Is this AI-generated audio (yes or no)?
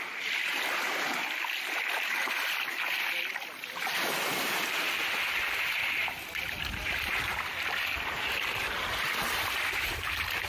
no